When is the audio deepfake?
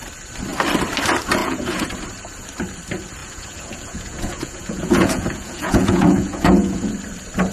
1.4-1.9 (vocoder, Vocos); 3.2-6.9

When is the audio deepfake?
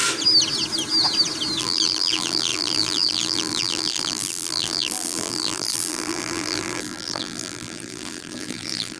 1.6-9.0 (vocoder, BigVGAN v2)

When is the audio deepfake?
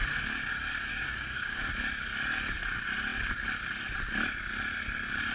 0.9-1.7 (codec, DAC)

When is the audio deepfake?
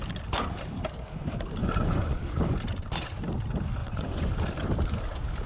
1.6-2.2 (vocoder, Vocos); 3.8-4.3